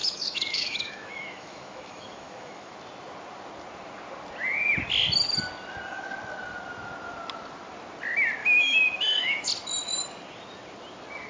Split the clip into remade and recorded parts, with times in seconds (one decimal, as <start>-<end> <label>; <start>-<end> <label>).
0.0-2.7 remade; 2.7-8.4 recorded; 8.4-9.5 remade; 9.5-11.3 recorded